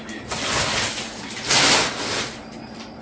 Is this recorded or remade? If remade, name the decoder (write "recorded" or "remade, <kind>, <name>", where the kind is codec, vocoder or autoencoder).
recorded